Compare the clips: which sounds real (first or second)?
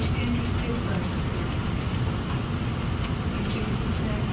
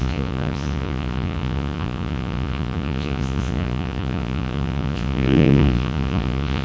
first